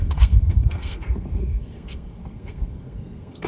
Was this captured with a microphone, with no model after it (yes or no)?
no